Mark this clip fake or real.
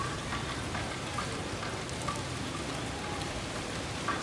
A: real